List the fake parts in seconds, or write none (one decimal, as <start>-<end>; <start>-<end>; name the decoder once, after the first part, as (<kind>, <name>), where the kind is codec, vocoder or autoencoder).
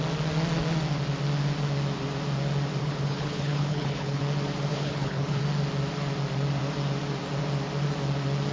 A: 2.8-4.2 (codec, HILCodec); 4.7-5.4